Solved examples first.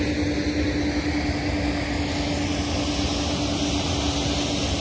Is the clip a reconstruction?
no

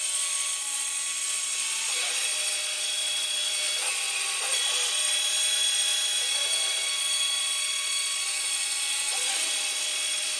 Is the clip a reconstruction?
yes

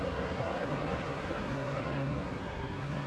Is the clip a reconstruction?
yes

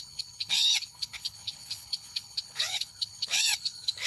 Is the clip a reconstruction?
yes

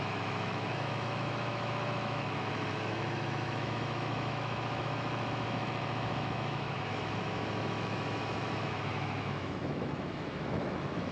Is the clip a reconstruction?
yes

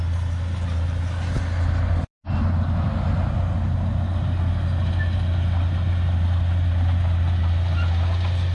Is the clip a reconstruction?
no